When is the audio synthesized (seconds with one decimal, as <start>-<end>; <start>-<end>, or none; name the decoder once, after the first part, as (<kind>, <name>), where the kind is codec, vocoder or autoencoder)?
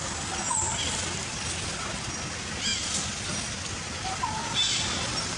none